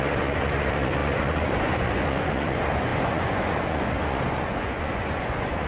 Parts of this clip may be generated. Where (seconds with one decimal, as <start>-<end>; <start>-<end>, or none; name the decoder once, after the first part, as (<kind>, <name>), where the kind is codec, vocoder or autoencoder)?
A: 0.0-5.7 (vocoder, Vocos)